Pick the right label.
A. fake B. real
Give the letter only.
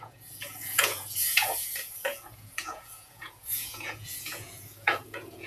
A